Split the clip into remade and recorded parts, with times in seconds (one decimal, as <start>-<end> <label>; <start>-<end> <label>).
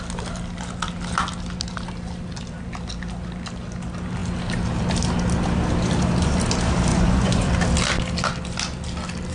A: 0.0-6.9 recorded; 6.9-7.5 remade; 7.5-9.3 recorded